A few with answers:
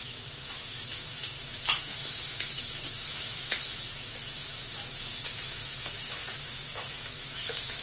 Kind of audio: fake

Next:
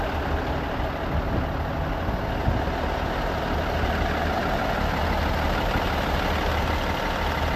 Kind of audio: real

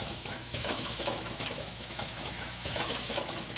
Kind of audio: fake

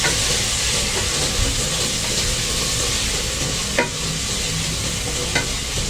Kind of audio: real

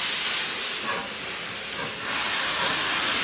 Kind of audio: real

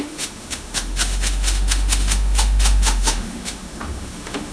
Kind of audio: fake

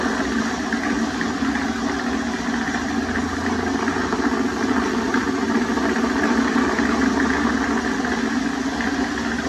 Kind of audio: real